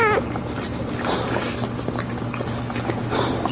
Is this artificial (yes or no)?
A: no